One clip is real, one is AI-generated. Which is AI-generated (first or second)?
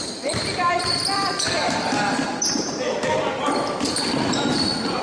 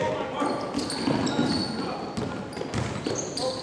first